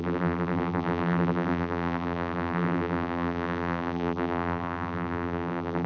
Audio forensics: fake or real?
fake